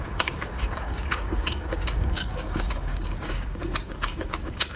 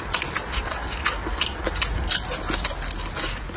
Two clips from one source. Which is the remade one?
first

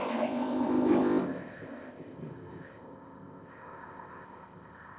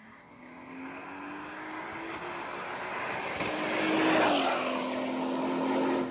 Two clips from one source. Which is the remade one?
first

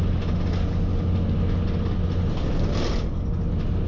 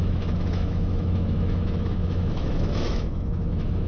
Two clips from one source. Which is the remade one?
second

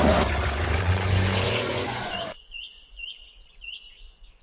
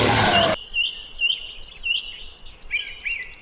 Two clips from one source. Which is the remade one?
first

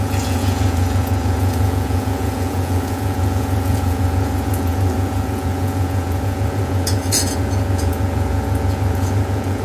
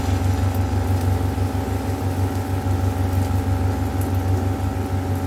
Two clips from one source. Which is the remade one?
first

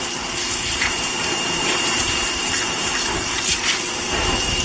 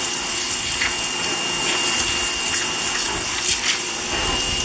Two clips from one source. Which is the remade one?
first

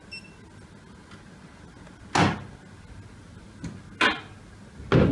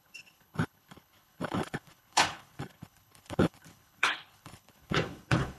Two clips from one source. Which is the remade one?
second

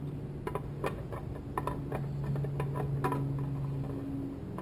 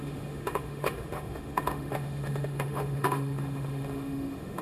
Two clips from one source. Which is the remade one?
second